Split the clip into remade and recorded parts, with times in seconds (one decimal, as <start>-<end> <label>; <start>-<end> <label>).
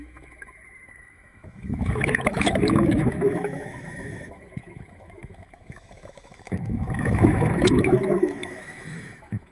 0.0-9.5 remade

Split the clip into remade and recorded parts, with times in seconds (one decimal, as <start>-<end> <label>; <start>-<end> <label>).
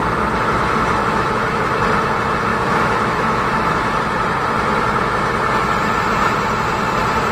0.0-1.0 recorded; 1.0-1.7 remade; 1.7-2.5 recorded; 2.5-4.0 remade; 4.0-7.3 recorded